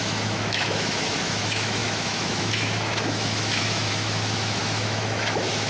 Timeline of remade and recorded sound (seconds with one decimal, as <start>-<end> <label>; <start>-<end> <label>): 0.0-5.7 remade